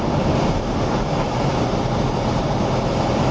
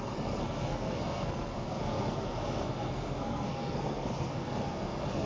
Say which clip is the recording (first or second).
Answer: first